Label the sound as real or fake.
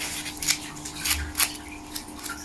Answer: real